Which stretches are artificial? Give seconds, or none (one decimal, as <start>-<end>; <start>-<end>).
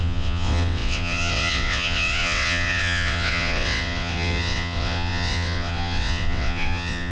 0.0-7.1